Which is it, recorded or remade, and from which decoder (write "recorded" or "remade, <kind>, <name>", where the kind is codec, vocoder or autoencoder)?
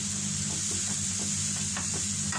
recorded